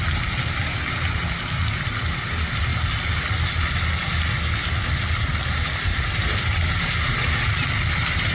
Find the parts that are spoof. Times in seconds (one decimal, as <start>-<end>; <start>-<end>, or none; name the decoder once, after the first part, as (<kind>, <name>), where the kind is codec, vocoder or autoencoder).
none